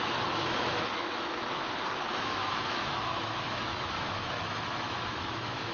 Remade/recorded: remade